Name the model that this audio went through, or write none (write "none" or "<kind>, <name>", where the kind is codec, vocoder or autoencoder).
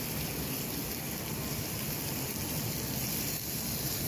none